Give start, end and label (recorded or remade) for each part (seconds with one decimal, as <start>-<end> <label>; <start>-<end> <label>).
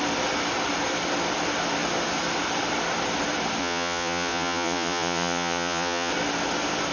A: 0.0-3.6 recorded; 3.6-6.1 remade; 6.1-6.9 recorded